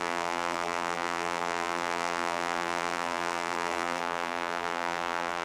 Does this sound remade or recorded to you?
remade